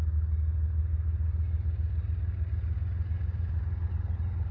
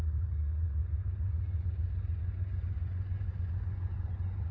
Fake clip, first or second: second